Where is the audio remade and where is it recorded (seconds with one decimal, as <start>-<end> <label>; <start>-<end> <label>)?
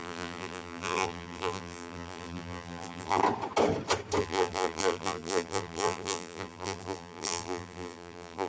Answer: 0.0-3.2 remade; 3.2-4.2 recorded; 4.2-8.5 remade